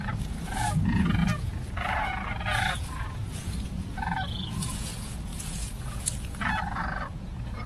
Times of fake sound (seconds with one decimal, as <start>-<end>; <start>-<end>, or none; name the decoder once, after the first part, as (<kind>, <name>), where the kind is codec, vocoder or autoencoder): 0.0-7.7 (vocoder, Vocos)